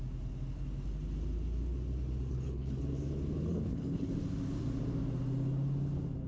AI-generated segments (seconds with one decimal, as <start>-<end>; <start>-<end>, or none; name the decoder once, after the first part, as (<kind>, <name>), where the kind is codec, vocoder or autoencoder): 2.3-2.8 (codec, HILCodec); 3.5-4.1